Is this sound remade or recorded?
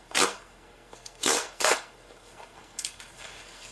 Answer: remade